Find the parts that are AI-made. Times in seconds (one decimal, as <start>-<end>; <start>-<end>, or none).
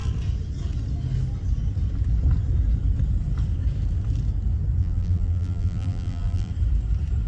4.8-6.5